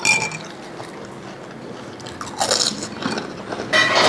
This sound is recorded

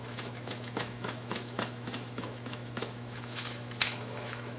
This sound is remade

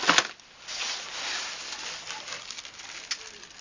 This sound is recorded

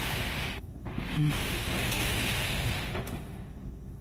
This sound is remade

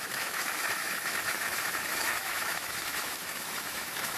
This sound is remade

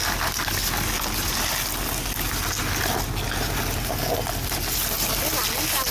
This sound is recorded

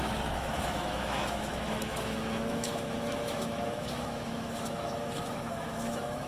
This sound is remade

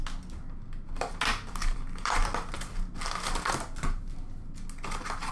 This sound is recorded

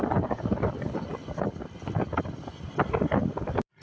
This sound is recorded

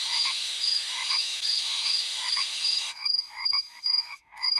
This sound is remade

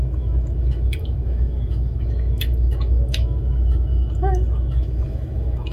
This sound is remade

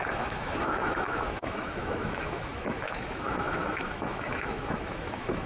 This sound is remade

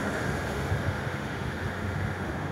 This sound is remade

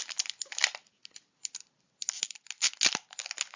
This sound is recorded